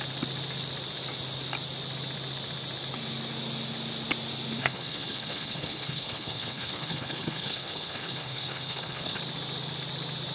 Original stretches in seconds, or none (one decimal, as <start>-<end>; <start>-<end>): 0.0-4.6; 9.2-10.3